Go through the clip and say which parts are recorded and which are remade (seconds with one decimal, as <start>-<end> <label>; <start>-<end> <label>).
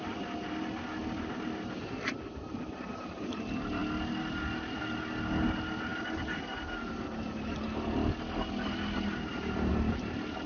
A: 0.0-10.5 recorded